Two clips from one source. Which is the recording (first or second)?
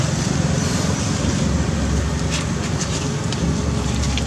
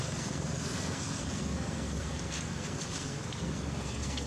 first